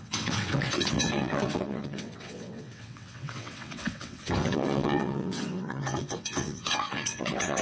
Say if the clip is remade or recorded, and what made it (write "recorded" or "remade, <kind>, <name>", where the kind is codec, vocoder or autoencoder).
remade, vocoder, WaveNeXt